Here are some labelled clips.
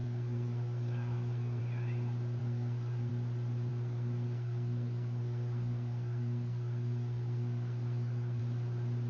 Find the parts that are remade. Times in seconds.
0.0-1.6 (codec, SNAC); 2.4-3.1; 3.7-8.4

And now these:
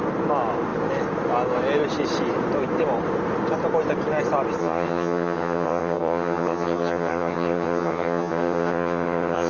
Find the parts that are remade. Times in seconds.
4.6-9.5 (vocoder, HiFi-GAN)